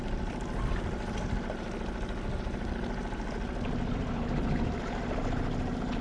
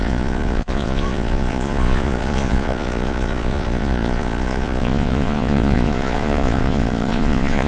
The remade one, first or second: second